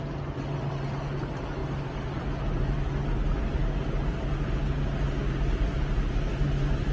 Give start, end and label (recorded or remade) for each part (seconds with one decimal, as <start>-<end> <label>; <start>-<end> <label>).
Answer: 0.0-1.6 recorded; 1.6-2.5 remade; 2.5-6.9 recorded